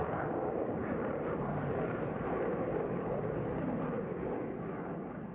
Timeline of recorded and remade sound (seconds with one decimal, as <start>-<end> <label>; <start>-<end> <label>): 0.0-0.8 recorded; 0.8-2.3 remade; 2.3-5.3 recorded